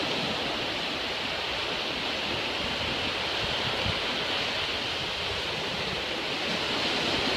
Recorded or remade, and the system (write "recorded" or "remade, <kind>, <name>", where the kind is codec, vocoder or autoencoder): recorded